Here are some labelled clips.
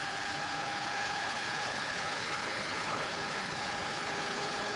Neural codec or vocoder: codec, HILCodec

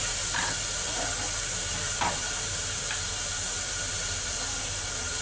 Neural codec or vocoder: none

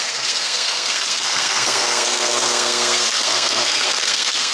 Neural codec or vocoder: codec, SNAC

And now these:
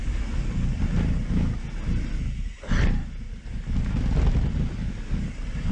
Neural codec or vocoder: none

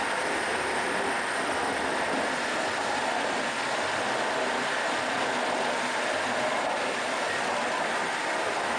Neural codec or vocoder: none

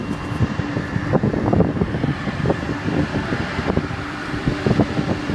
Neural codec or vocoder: vocoder, BigVGAN v2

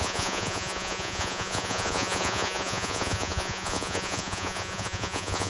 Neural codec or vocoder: vocoder, Vocos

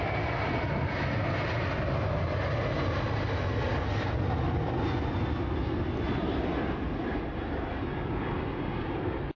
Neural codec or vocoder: none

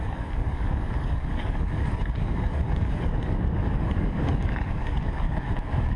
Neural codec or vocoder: codec, DAC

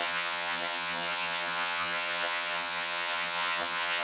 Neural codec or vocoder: vocoder, HiFi-GAN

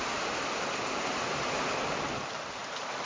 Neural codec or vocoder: none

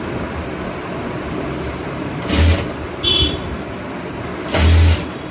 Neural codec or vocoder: none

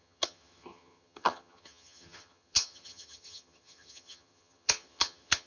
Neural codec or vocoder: vocoder, HiFi-GAN